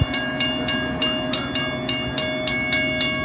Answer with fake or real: real